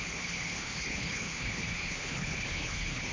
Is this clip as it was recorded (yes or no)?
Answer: no